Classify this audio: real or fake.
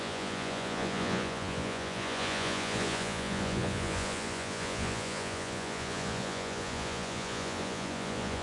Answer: fake